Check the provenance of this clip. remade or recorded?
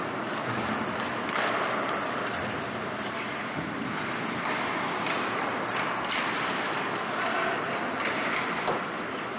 remade